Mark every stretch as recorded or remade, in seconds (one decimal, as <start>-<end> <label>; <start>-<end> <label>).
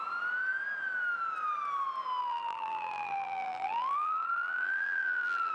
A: 0.0-2.2 recorded; 2.2-5.5 remade